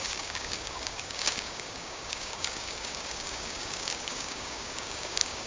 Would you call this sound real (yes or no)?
no